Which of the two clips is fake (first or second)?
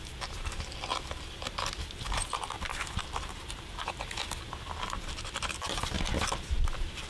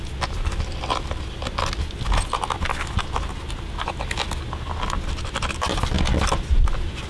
first